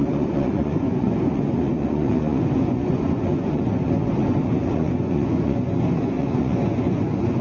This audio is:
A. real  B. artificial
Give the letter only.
B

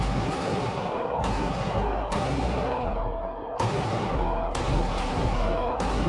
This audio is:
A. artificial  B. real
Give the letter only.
A